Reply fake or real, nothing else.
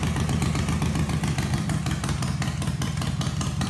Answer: real